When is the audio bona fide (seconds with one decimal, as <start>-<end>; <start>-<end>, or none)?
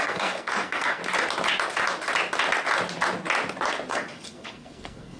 1.0-3.9